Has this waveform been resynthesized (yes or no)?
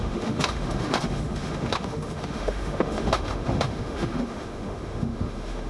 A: yes